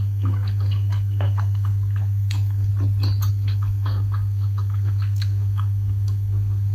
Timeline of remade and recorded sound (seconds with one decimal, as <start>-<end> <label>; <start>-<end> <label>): 0.0-2.7 remade; 2.7-3.3 recorded; 3.3-6.7 remade